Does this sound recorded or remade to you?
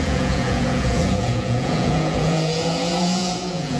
remade